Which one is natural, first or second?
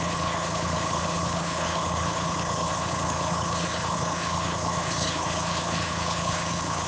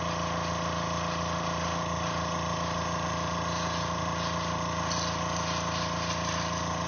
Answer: second